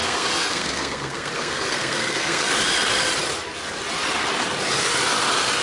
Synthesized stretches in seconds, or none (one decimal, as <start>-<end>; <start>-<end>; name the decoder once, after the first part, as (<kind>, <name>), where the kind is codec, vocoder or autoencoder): 0.0-2.5 (codec, SNAC)